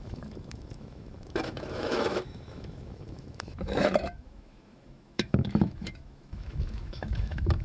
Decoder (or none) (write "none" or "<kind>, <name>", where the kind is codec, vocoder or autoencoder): autoencoder, DAC-VAE